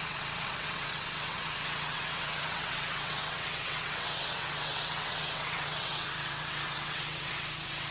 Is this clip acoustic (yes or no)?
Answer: no